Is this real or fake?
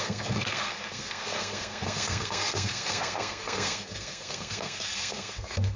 fake